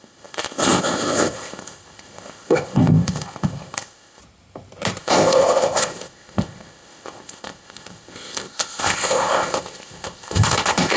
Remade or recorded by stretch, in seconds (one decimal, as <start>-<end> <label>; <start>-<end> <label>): 0.0-4.2 remade; 4.2-5.0 recorded; 5.0-11.0 remade